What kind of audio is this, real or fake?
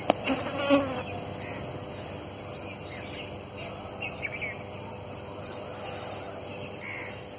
real